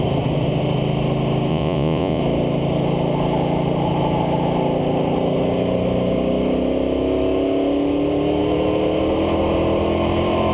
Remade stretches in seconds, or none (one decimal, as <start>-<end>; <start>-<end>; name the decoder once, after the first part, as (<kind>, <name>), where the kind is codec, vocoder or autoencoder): 1.5-2.2 (vocoder, Vocos)